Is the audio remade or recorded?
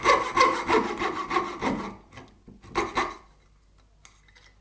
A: recorded